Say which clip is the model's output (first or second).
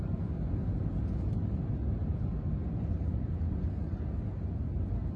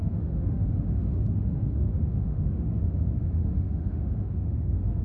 second